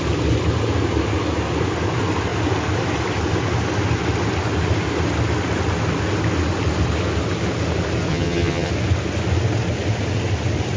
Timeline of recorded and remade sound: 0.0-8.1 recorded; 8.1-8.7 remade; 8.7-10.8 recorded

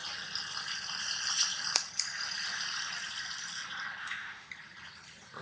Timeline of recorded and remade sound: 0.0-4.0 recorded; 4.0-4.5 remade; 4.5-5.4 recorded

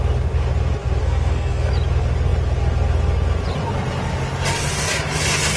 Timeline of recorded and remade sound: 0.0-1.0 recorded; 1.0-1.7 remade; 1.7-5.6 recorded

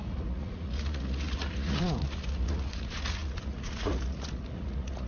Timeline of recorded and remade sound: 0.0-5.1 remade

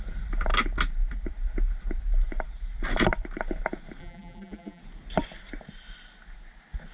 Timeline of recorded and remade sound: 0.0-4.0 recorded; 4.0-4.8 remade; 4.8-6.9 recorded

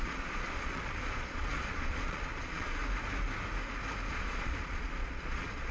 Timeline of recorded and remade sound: 0.0-2.8 remade; 2.8-4.1 recorded; 4.1-5.7 remade

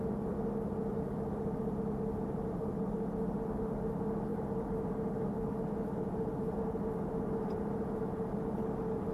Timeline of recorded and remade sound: 0.0-9.1 recorded